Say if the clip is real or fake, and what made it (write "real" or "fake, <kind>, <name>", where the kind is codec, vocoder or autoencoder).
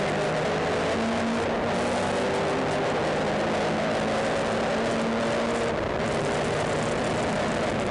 real